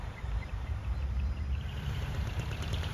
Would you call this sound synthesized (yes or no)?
yes